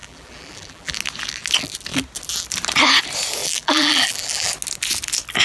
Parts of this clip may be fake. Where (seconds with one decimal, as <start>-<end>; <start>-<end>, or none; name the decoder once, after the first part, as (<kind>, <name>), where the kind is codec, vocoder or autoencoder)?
0.0-1.0 (vocoder, BigVGAN v2); 3.4-4.5